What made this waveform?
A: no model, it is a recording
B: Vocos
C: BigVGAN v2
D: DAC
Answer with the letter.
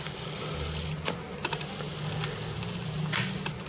A